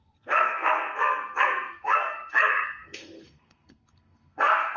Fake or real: fake